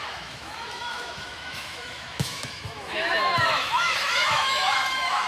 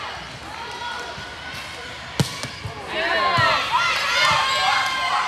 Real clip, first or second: second